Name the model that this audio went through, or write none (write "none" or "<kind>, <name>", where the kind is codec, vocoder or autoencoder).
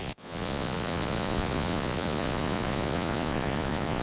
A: vocoder, Vocos